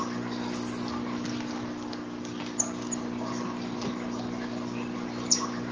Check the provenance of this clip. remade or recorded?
recorded